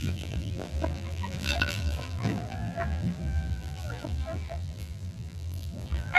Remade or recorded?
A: remade